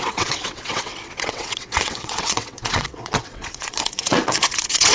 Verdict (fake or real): fake